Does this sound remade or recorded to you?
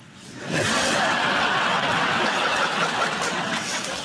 remade